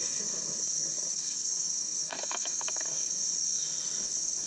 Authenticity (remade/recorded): remade